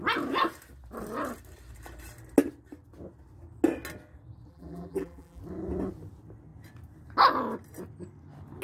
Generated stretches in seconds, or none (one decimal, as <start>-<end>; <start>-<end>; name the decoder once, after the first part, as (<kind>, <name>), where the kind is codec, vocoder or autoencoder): 4.5-5.4 (vocoder, BigVGAN v2)